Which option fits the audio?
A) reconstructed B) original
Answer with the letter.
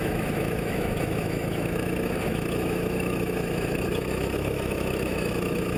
A